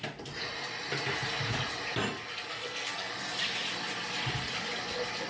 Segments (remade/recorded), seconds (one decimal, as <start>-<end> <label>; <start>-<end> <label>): 0.0-2.5 recorded; 2.5-3.1 remade; 3.1-5.3 recorded